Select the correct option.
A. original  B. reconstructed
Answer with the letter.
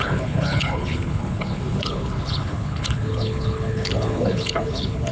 B